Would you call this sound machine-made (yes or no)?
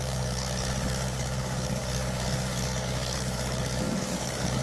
yes